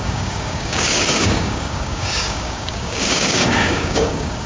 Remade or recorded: remade